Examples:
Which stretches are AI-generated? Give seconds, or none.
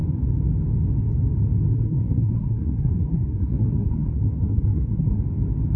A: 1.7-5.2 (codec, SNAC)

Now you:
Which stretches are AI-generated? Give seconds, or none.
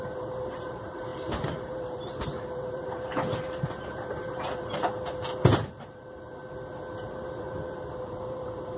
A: 0.0-6.4 (vocoder, BigVGAN v2); 7.0-8.8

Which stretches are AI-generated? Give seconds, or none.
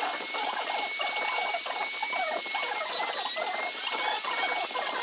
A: none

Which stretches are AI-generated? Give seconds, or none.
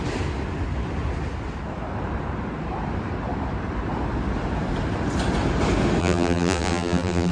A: 6.0-7.3 (vocoder, BigVGAN v2)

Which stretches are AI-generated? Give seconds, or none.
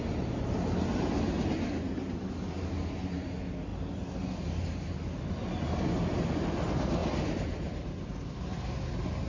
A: none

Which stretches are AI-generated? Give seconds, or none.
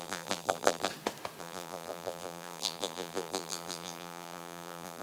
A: 0.0-0.9 (vocoder, BigVGAN v2); 1.4-5.0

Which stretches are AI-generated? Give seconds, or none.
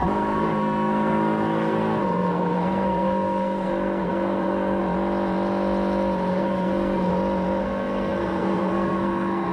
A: 0.0-4.8 (codec, SNAC); 6.3-7.1; 7.6-9.5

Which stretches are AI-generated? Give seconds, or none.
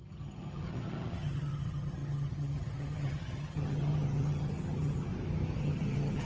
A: 0.0-5.1 (vocoder, HiFi-GAN); 5.6-6.3